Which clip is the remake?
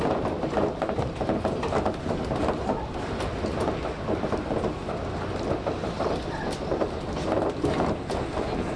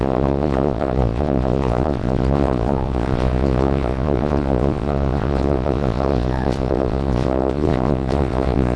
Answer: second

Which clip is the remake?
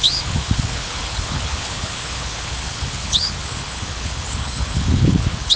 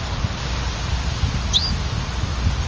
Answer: first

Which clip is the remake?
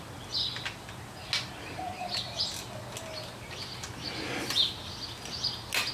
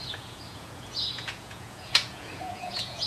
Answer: second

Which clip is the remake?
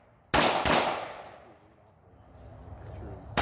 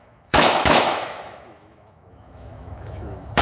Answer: second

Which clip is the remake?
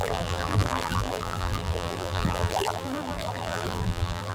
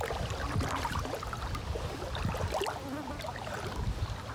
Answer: first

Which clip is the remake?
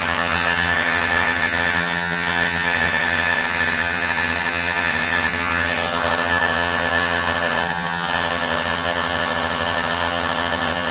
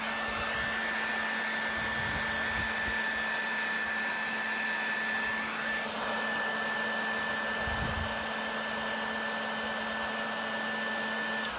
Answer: first